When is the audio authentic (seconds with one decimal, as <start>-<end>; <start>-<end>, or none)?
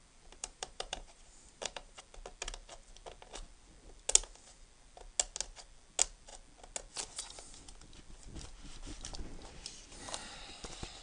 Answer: 0.0-0.4; 2.0-11.0